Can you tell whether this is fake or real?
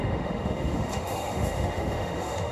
fake